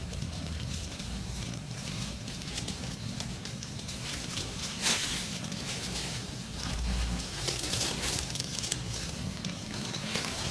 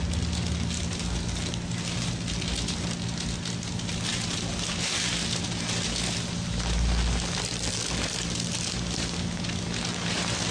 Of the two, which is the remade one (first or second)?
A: first